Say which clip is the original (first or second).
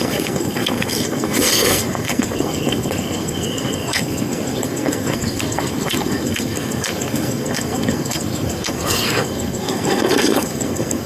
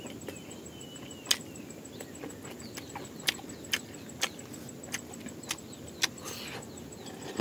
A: second